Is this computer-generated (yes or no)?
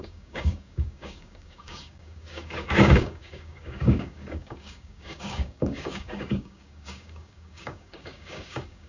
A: yes